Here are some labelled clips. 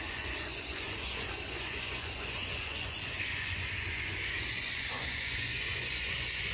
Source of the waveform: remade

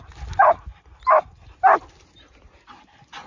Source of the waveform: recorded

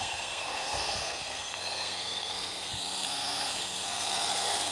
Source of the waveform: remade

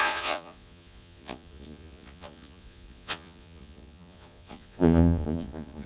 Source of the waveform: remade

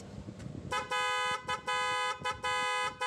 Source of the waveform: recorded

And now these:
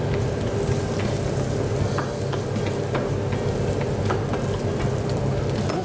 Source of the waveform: recorded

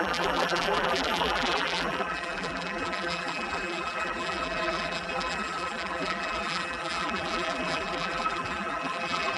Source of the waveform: remade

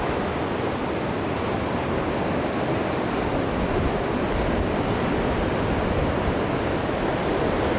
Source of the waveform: recorded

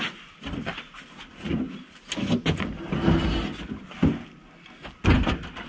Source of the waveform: recorded